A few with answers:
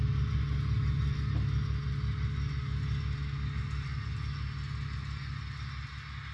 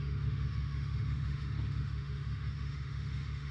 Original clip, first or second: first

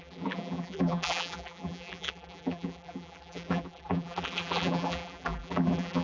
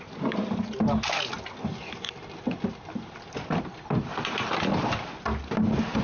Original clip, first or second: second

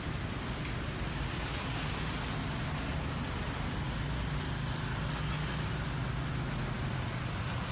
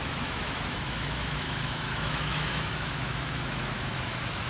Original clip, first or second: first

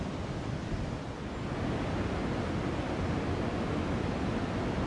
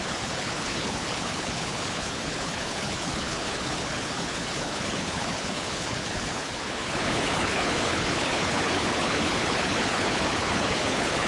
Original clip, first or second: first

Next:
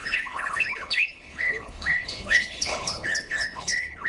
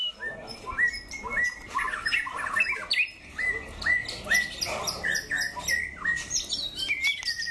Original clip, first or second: second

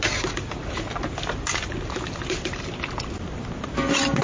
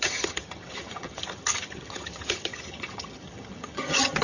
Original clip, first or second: first